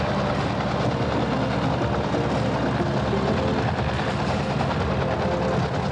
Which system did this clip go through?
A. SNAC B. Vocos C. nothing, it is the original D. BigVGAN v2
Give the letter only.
C